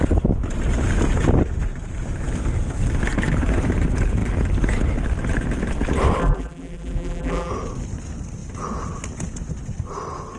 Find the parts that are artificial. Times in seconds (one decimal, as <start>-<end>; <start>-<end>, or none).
6.2-7.5